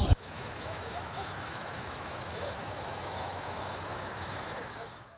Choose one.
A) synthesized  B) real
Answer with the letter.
A